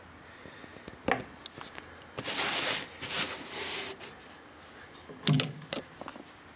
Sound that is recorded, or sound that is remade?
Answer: recorded